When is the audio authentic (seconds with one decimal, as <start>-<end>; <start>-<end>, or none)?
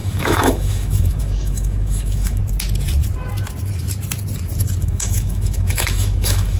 2.4-4.8